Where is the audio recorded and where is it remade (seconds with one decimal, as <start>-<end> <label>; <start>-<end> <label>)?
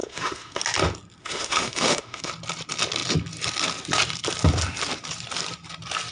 0.0-0.6 remade; 0.6-1.2 recorded; 1.2-2.3 remade; 2.3-6.1 recorded